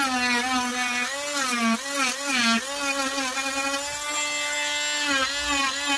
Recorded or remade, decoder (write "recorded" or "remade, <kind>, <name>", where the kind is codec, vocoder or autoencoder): recorded